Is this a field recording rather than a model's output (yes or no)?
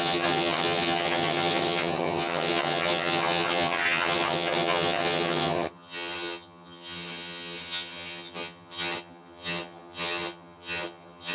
no